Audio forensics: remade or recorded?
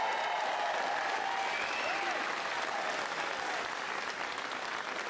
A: recorded